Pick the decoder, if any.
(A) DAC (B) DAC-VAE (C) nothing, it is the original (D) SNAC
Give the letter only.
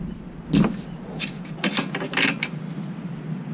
C